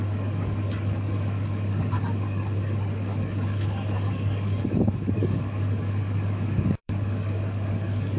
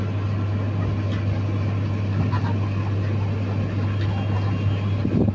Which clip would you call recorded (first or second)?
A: second